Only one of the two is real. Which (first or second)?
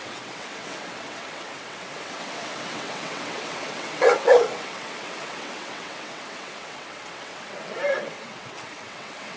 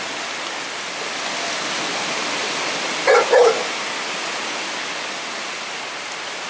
second